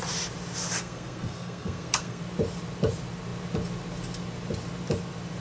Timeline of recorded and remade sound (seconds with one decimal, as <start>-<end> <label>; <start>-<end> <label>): 0.0-0.8 recorded; 0.8-2.2 remade; 2.2-5.4 recorded